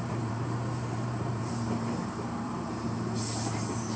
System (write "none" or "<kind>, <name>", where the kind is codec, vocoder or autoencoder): vocoder, BigVGAN v2